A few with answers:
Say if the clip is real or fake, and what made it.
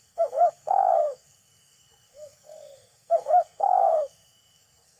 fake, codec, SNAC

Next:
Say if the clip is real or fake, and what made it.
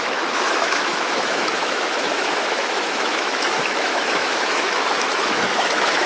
fake, autoencoder, DAC-VAE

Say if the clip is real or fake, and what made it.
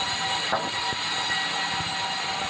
real